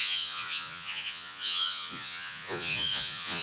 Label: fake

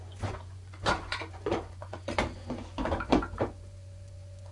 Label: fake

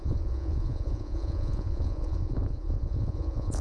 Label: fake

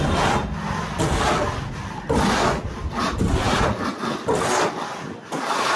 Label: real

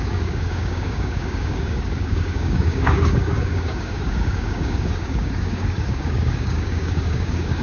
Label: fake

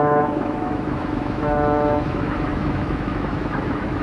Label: fake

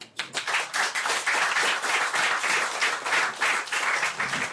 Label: real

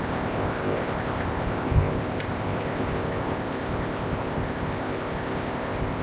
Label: fake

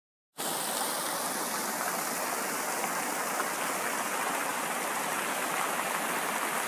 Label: real